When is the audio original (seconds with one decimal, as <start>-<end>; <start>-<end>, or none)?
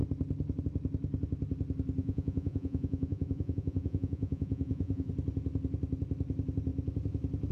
0.0-2.0; 5.1-7.5